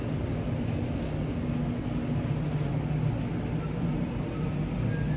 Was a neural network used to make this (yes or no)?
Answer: no